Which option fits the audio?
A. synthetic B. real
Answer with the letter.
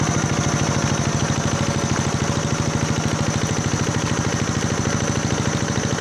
B